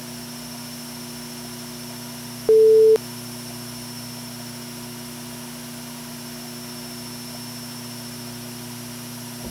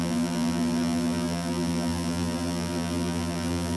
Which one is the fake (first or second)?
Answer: second